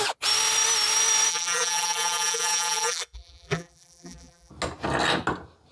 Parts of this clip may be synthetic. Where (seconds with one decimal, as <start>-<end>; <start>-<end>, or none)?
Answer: 1.3-4.5